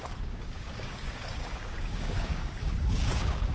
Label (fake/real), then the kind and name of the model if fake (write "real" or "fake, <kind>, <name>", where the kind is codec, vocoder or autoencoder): fake, codec, DAC